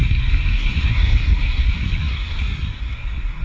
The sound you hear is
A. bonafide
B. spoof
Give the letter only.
B